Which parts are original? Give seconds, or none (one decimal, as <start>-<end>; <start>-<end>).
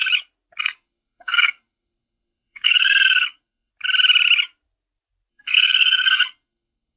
0.0-0.6; 3.7-5.3